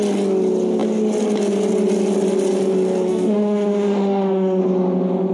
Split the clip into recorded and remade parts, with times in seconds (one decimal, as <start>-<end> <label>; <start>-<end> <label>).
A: 0.0-3.1 recorded; 3.1-4.6 remade; 4.6-5.3 recorded